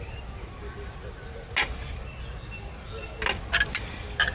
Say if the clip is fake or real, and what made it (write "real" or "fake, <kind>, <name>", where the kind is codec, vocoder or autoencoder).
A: real